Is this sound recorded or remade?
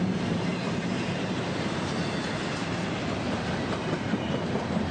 remade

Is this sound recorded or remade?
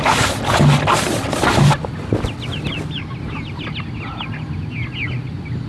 recorded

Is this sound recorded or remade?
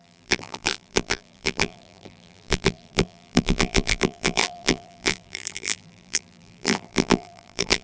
remade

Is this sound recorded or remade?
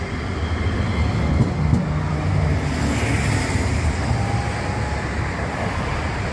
recorded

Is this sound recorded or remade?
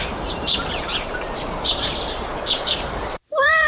remade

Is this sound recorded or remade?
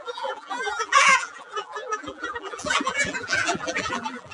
remade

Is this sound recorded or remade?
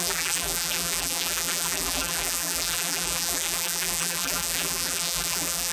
remade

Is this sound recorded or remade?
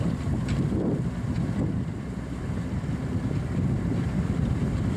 remade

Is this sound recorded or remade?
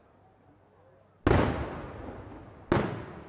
recorded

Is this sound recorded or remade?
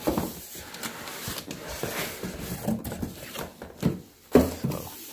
recorded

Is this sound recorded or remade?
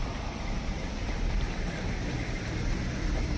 remade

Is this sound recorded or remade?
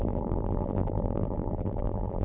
remade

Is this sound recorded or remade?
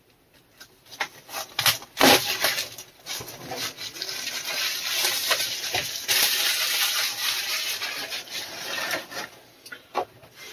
recorded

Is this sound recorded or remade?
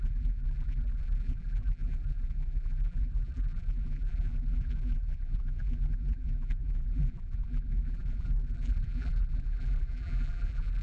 remade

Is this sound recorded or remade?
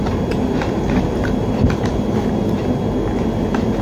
recorded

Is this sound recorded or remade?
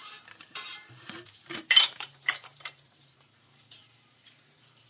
remade